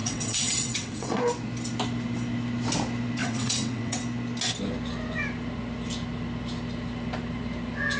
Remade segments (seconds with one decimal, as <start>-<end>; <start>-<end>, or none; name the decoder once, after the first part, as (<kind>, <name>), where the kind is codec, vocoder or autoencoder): 0.0-1.2 (vocoder, WaveNeXt); 3.2-4.0